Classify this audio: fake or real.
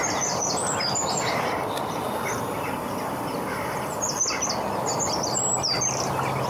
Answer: real